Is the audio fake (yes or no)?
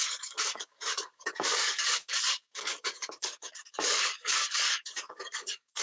yes